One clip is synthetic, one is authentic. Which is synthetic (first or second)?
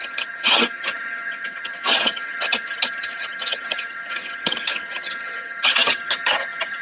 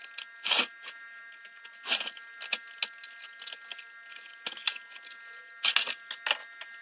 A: first